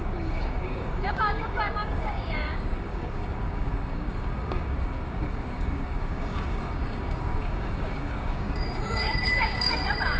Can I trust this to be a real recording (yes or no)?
no